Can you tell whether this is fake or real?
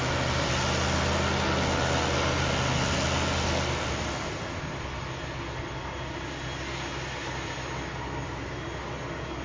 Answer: real